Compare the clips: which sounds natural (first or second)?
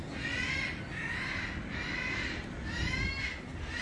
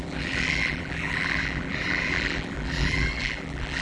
first